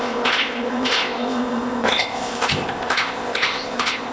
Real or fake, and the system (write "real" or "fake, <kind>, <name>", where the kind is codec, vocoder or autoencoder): fake, codec, ZipCodec